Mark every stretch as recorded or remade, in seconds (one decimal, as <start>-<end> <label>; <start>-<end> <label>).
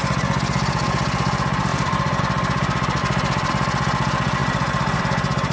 0.0-1.7 recorded; 1.7-2.2 remade; 2.2-3.0 recorded; 3.0-3.5 remade; 3.5-4.4 recorded; 4.4-5.0 remade; 5.0-5.5 recorded